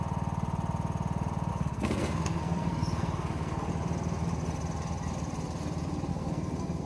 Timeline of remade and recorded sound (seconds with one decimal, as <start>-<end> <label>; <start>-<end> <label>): 0.0-1.5 recorded; 1.5-3.7 remade; 3.7-6.1 recorded; 6.1-6.9 remade